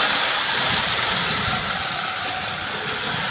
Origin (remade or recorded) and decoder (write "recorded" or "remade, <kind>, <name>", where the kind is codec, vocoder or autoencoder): recorded